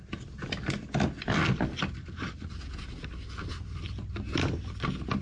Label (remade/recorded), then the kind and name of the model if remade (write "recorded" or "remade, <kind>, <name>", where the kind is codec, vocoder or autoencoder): recorded